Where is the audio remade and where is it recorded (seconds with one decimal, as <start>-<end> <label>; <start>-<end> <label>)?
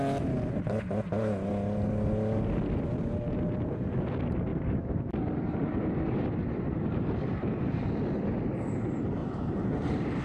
0.0-4.5 recorded; 4.5-5.9 remade; 5.9-9.2 recorded; 9.2-10.2 remade